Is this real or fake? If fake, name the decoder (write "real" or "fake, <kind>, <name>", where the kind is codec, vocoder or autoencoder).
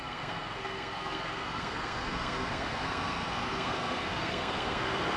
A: fake, codec, SNAC